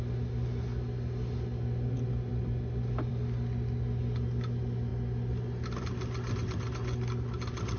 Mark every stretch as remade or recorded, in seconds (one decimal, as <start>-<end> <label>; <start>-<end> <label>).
0.0-7.8 recorded